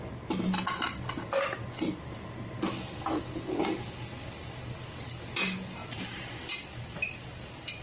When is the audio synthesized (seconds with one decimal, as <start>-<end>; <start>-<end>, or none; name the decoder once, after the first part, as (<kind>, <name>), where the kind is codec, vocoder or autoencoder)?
none